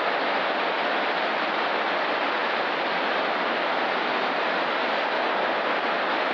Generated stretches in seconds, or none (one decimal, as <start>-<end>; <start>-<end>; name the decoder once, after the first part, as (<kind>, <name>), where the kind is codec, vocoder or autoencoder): none